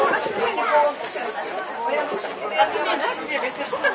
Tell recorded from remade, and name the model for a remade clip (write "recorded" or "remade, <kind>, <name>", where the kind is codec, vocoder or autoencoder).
recorded